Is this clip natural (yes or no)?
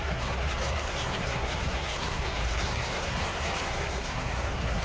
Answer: no